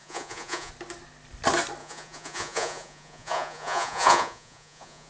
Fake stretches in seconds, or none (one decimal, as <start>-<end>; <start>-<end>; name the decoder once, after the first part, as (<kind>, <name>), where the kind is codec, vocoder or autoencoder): 0.0-0.7 (vocoder, Vocos); 1.8-5.1